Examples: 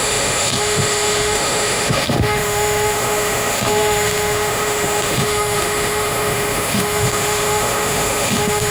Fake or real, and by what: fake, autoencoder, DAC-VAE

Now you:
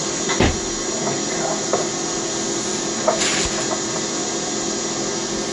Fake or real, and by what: real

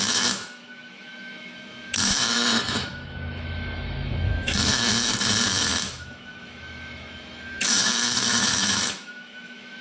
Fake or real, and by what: fake, autoencoder, DAC-VAE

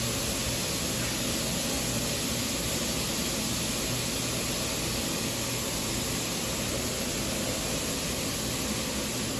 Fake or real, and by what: real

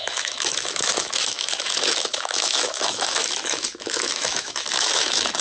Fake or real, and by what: fake, autoencoder, DAC-VAE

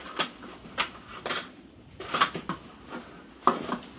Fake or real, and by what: real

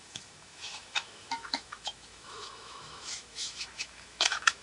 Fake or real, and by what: fake, autoencoder, DAC-VAE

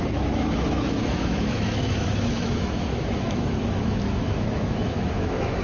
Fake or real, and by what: fake, autoencoder, DAC-VAE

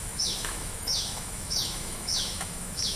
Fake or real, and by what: fake, autoencoder, DAC-VAE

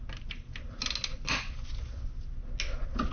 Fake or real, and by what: real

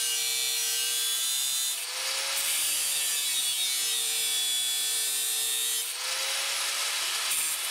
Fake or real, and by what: real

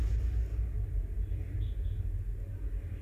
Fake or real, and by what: real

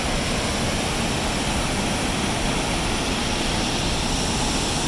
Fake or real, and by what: real